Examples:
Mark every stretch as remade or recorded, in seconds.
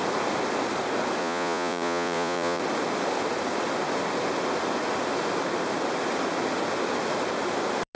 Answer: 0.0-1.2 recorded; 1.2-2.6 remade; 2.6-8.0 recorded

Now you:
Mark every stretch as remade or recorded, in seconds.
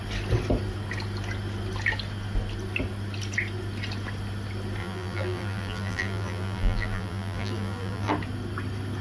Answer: 0.0-4.8 recorded; 4.8-8.1 remade; 8.1-9.0 recorded